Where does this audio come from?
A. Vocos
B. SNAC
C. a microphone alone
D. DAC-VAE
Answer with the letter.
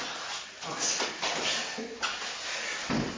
C